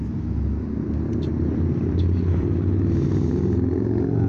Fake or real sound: real